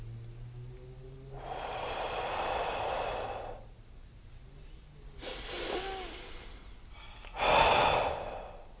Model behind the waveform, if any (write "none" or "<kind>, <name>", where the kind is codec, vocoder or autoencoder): none